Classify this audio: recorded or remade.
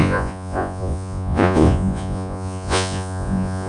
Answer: remade